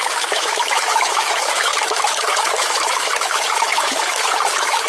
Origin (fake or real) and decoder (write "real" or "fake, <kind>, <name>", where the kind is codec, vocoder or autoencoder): fake, autoencoder, DAC-VAE